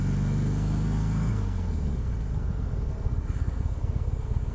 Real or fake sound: fake